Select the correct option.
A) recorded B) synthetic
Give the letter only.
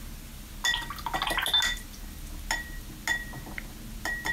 A